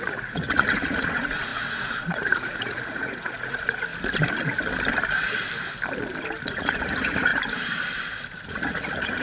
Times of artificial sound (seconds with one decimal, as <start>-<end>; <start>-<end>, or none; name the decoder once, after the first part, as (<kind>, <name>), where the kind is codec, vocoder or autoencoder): 0.0-3.9 (vocoder, Vocos); 6.5-7.3; 8.5-9.2